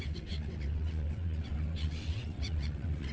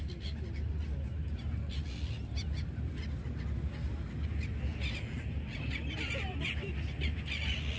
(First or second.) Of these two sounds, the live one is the second